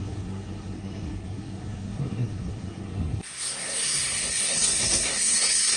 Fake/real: fake